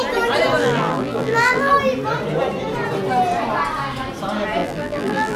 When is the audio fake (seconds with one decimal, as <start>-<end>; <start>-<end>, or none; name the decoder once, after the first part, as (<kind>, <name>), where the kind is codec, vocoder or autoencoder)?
0.6-1.7 (vocoder, BigVGAN v2); 4.6-5.4